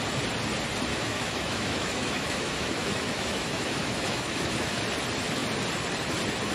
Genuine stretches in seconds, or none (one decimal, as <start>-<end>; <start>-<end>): 0.0-0.9; 4.8-6.5